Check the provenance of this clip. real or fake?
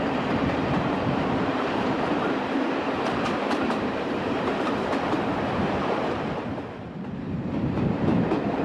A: fake